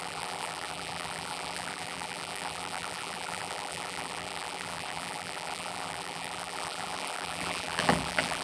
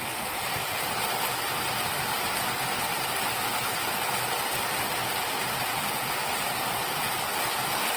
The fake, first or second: first